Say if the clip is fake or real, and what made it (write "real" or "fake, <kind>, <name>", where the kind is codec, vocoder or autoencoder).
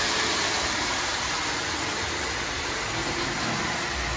real